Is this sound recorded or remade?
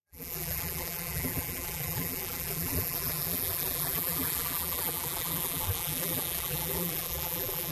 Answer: remade